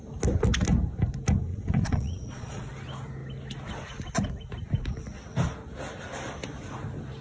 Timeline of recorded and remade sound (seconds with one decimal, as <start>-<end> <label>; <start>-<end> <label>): 0.0-1.5 recorded; 1.5-2.7 remade; 2.7-7.2 recorded